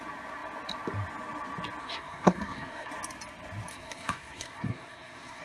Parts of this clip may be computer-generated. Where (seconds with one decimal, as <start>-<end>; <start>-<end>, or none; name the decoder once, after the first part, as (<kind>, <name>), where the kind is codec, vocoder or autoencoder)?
1.8-2.9 (codec, SNAC); 3.7-5.4